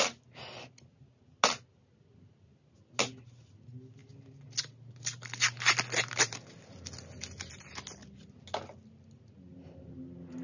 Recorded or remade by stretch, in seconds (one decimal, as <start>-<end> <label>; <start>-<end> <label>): 0.0-10.4 recorded